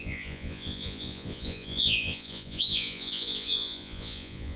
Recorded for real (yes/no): no